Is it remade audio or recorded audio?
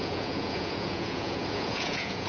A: remade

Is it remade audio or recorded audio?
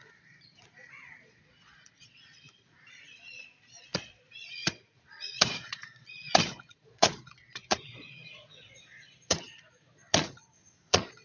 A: remade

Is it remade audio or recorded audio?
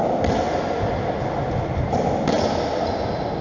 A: recorded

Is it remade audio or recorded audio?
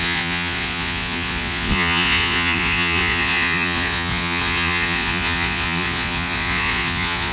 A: remade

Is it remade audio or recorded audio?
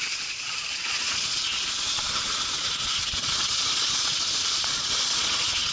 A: remade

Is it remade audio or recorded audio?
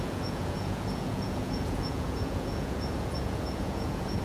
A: remade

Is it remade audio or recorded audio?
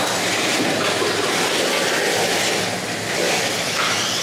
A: recorded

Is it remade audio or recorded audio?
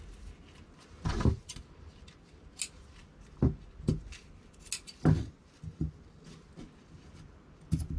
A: recorded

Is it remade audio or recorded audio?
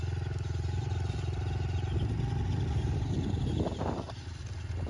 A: recorded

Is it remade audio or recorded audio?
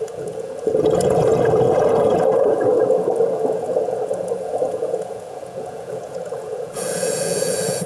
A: remade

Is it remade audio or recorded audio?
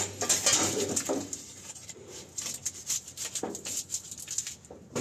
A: recorded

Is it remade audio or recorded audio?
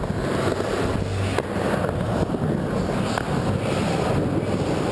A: recorded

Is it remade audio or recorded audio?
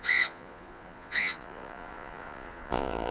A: remade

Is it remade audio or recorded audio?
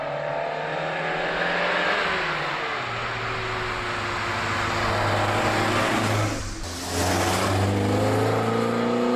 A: recorded